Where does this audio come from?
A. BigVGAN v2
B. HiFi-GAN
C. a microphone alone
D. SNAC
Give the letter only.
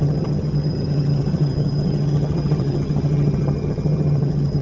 B